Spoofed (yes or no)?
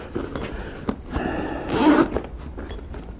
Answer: no